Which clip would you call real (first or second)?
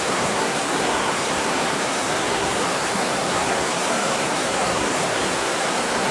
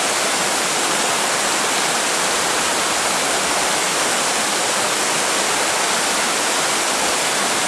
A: second